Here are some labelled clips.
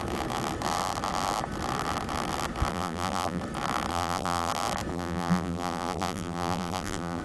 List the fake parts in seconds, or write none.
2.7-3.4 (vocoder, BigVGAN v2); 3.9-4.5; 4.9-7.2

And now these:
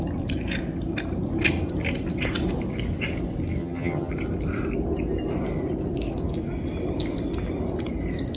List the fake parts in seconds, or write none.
3.6-4.1 (vocoder, HiFi-GAN)

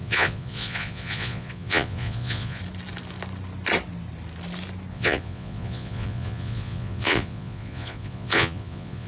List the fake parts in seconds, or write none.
0.0-2.6 (vocoder, Vocos); 4.9-9.1

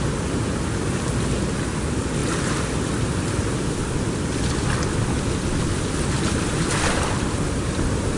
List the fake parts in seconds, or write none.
none

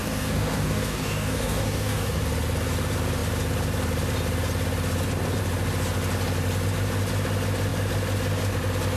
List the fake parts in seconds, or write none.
0.0-2.2 (codec, DAC)

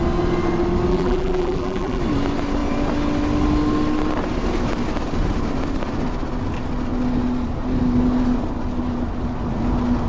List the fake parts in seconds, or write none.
0.9-2.0 (vocoder, BigVGAN v2)